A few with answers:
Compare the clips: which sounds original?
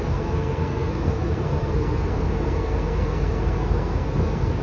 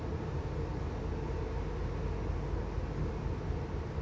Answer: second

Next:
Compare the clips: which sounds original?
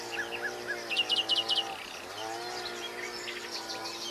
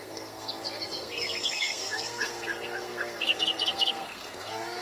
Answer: first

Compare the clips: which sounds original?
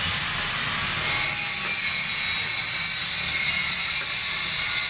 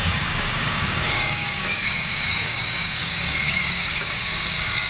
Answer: first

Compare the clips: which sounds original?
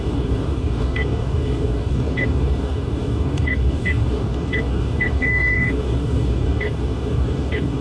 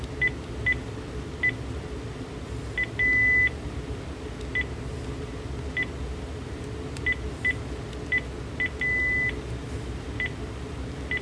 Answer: second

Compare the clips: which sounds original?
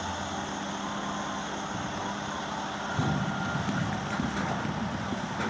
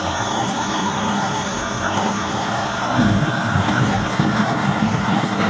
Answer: first